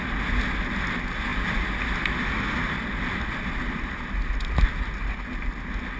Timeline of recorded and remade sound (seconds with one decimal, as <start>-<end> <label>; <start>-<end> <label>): 0.0-1.3 recorded; 1.3-1.8 remade; 1.8-2.6 recorded; 2.6-4.7 remade; 4.7-6.0 recorded